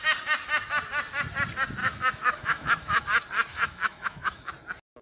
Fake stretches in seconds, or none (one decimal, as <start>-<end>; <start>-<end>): 1.8-3.0; 3.5-4.5